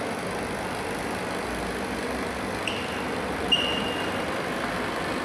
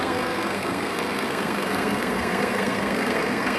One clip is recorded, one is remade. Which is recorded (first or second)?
first